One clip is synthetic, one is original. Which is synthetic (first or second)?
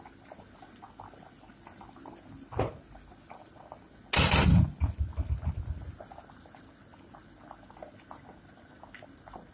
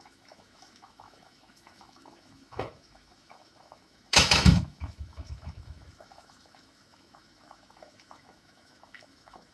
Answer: second